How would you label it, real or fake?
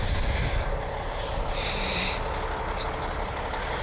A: real